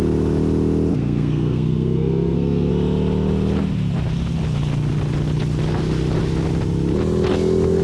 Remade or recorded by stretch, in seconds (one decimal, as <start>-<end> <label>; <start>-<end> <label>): 0.0-0.9 recorded; 0.9-2.7 remade; 2.7-7.8 recorded